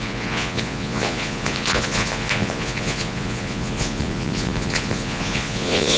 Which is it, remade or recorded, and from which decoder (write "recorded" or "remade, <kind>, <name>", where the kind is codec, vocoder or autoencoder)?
remade, vocoder, Vocos